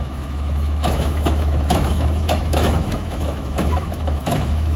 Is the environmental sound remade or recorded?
remade